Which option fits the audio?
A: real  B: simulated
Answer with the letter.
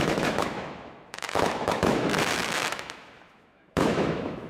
B